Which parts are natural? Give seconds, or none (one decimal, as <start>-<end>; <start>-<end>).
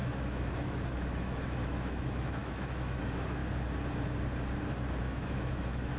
3.4-5.0